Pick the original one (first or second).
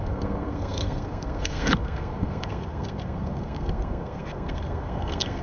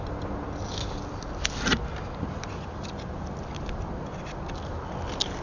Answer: second